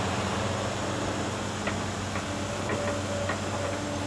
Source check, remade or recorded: recorded